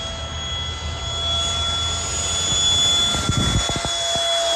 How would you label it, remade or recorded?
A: recorded